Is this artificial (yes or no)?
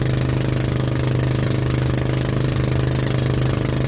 no